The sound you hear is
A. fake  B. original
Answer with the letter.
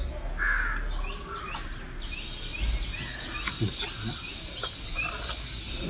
B